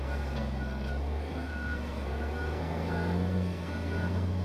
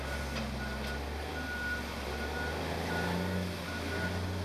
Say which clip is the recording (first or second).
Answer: second